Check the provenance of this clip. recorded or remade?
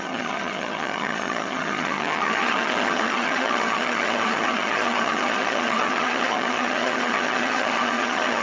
remade